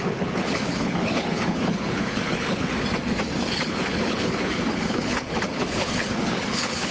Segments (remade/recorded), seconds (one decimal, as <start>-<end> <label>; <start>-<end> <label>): 0.0-2.7 remade; 2.7-3.4 recorded; 3.4-6.9 remade